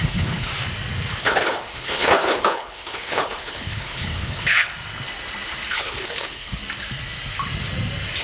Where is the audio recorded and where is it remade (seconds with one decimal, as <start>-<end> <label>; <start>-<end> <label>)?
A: 0.0-0.5 remade; 0.5-1.2 recorded; 1.2-4.7 remade; 4.7-5.7 recorded; 5.7-6.6 remade; 6.6-8.2 recorded